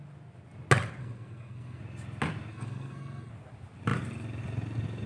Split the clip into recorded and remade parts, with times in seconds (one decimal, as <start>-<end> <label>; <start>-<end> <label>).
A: 0.0-1.0 recorded; 1.0-1.8 remade; 1.8-2.5 recorded; 2.5-3.3 remade; 3.3-5.1 recorded